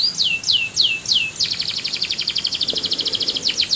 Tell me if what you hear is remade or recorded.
recorded